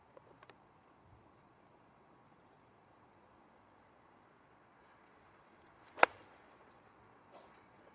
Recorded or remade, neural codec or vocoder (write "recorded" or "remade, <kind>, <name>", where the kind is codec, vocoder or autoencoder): remade, vocoder, Vocos